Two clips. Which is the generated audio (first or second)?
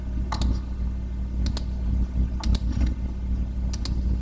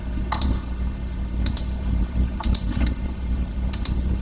second